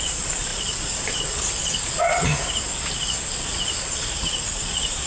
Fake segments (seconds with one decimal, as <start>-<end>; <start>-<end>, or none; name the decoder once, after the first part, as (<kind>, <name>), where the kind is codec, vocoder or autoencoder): 0.0-2.3 (vocoder, Vocos); 3.3-5.1